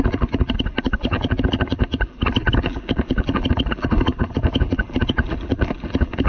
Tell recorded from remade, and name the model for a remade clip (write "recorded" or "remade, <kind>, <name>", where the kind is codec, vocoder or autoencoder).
remade, vocoder, BigVGAN v2